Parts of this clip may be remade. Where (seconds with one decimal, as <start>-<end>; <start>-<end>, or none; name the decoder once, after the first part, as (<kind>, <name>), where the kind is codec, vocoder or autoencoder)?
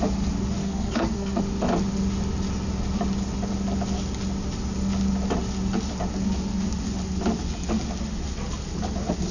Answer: 0.6-1.4 (codec, SNAC)